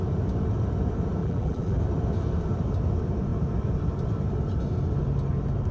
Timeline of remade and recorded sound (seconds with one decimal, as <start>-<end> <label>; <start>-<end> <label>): 0.0-1.2 recorded; 1.2-1.8 remade; 1.8-5.7 recorded